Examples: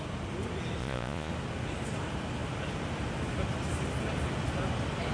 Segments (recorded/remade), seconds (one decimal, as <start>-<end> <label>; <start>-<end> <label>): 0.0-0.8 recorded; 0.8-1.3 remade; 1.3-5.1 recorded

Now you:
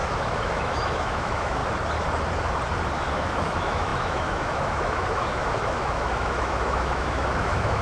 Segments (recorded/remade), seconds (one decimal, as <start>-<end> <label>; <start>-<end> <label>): 0.0-1.6 remade; 1.6-3.1 recorded; 3.1-7.8 remade

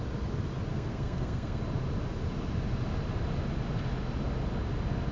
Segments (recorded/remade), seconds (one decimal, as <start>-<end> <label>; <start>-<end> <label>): 0.0-0.7 recorded; 0.7-1.6 remade; 1.6-5.1 recorded

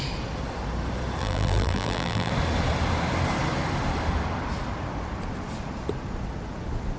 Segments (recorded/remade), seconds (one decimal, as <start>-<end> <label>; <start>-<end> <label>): 0.0-1.2 recorded; 1.2-2.3 remade; 2.3-7.0 recorded